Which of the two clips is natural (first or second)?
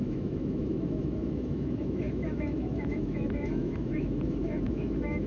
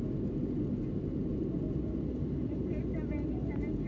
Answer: second